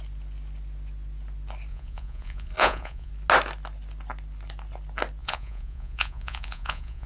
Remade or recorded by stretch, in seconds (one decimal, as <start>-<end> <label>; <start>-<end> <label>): 0.0-1.7 recorded; 1.7-3.1 remade; 3.1-5.2 recorded; 5.2-7.1 remade